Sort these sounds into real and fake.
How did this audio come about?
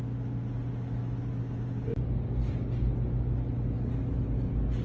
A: real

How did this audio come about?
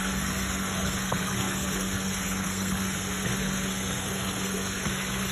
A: fake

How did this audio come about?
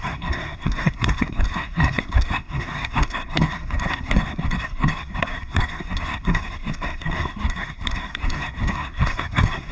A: fake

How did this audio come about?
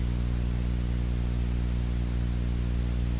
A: real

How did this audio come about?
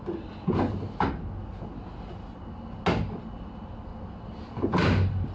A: real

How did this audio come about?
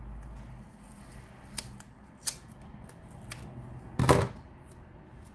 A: real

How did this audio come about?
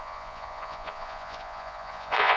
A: fake